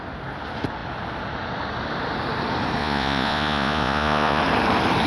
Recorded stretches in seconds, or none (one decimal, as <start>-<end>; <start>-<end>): 0.0-2.8; 4.4-5.1